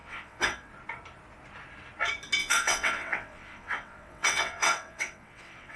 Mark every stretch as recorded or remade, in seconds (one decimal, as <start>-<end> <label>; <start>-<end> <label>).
0.0-0.7 remade; 0.7-2.4 recorded; 2.4-5.8 remade